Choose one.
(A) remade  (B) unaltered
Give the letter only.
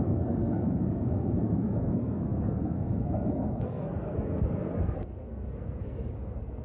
A